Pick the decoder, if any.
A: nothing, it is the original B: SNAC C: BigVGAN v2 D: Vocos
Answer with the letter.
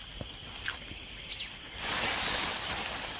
A